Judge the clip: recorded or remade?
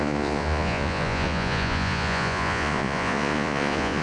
remade